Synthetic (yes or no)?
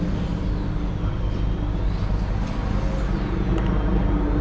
no